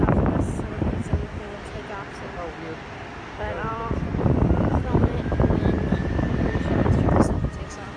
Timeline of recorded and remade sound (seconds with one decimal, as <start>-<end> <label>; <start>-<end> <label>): 0.0-1.0 remade; 1.0-3.3 recorded; 3.3-8.0 remade